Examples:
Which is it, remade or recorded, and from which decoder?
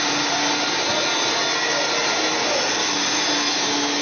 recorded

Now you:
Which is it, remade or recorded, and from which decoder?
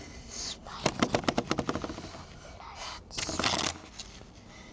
recorded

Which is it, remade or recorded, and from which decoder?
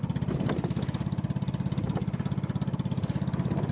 recorded